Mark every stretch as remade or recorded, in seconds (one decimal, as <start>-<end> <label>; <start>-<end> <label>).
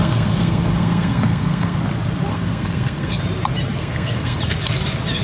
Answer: 0.0-1.8 remade; 1.8-2.3 recorded; 2.3-3.2 remade; 3.2-3.8 recorded; 3.8-4.4 remade; 4.4-5.2 recorded